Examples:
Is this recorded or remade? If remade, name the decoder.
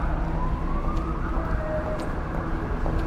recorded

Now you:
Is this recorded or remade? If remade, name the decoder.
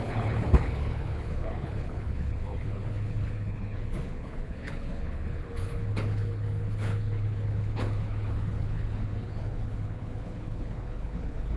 remade, codec, HILCodec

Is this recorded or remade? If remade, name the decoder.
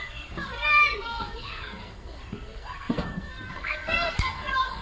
remade, codec, SNAC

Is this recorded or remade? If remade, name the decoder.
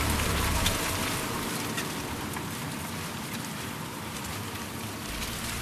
remade, vocoder, BigVGAN v2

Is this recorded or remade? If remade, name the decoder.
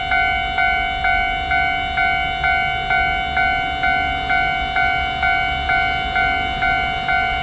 recorded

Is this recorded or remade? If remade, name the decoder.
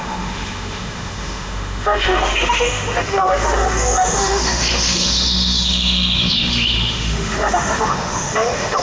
remade, autoencoder, DAC-VAE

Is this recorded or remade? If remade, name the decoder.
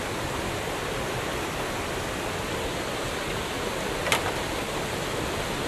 recorded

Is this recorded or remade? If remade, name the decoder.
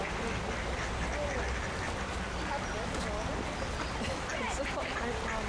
recorded